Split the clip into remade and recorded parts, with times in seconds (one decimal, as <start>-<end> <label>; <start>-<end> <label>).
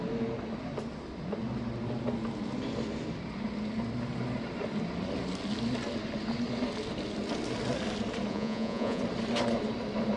0.0-8.3 recorded; 8.3-9.0 remade; 9.0-10.2 recorded